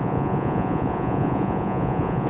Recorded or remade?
remade